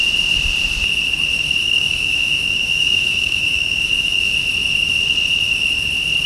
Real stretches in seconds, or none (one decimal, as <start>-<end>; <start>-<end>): 0.0-1.6; 4.3-6.3